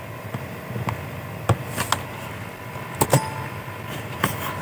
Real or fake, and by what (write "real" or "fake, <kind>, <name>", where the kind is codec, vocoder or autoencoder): real